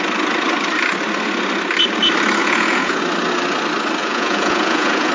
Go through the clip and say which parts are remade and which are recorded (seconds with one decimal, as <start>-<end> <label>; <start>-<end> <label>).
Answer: 0.0-2.4 recorded; 2.4-3.0 remade; 3.0-4.0 recorded; 4.0-5.1 remade